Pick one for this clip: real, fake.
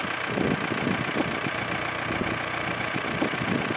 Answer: real